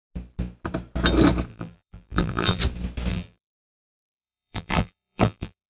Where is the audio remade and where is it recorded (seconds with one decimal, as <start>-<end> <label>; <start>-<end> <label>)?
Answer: 0.0-1.5 recorded; 1.5-2.6 remade; 2.6-3.1 recorded; 3.1-5.7 remade